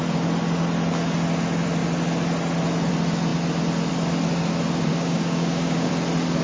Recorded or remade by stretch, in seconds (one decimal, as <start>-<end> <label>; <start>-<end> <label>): 0.0-4.9 recorded; 4.9-5.9 remade; 5.9-6.4 recorded